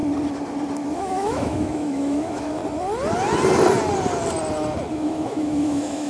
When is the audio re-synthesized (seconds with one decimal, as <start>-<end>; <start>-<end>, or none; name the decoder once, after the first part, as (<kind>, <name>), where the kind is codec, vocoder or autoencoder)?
0.9-2.6 (autoencoder, DAC-VAE); 4.9-6.1